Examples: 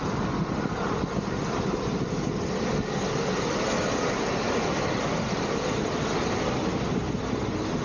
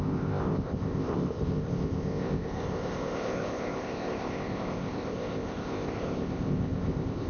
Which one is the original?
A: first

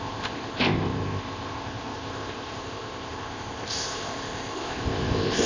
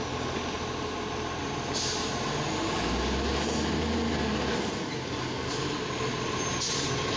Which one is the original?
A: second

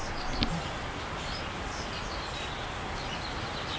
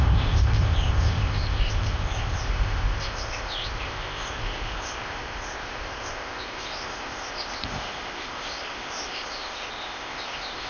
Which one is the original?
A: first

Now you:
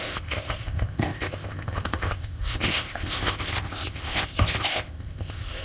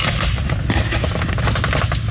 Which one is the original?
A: second